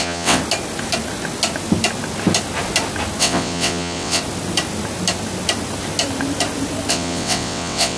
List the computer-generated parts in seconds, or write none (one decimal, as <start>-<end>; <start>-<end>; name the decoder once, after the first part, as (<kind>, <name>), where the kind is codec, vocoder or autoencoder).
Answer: 0.0-0.4 (vocoder, WaveNeXt); 3.2-4.2; 6.9-8.0